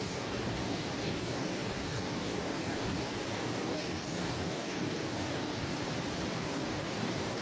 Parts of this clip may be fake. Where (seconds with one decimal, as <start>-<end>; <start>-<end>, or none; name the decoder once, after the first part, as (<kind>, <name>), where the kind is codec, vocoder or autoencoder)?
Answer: 0.0-5.7 (codec, DAC); 6.3-7.4